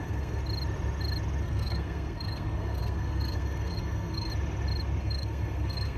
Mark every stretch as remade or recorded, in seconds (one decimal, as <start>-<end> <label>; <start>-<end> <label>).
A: 0.0-0.4 remade; 0.4-1.4 recorded; 1.4-4.3 remade; 4.3-5.0 recorded; 5.0-6.0 remade